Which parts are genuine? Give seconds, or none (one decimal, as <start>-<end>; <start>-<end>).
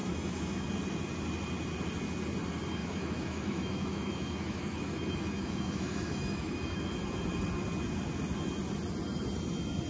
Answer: 0.7-2.8; 6.8-9.9